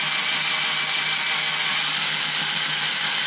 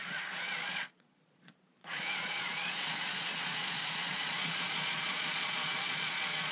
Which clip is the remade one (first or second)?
second